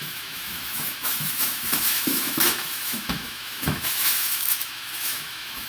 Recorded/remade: remade